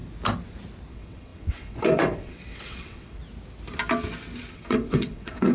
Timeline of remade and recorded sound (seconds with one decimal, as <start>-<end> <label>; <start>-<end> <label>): 0.0-0.9 recorded; 0.9-3.2 remade; 3.2-4.5 recorded; 4.5-5.5 remade